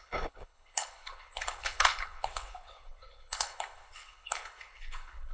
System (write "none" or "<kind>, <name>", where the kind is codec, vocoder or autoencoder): codec, HILCodec